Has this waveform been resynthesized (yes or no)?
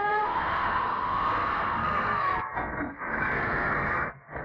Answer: yes